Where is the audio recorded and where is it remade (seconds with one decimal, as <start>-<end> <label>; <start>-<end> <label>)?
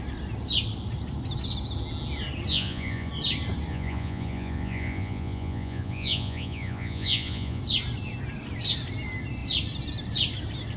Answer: 0.0-2.5 recorded; 2.5-3.1 remade; 3.1-3.7 recorded; 3.7-7.6 remade; 7.6-10.8 recorded